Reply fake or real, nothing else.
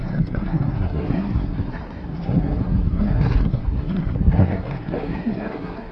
fake